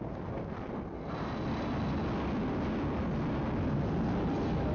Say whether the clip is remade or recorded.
recorded